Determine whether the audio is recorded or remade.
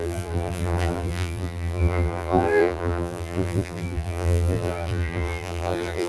remade